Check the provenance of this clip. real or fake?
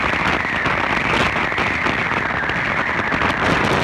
real